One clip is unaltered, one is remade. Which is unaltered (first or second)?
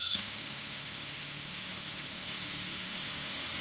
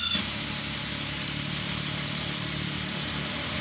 second